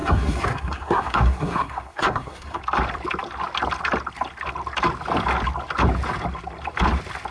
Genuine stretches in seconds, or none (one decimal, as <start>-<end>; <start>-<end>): 2.6-7.3